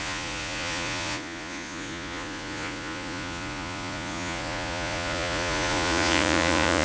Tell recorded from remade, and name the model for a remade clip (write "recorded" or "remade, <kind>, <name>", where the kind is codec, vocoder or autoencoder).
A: remade, vocoder, Vocos